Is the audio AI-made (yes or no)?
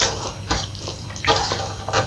no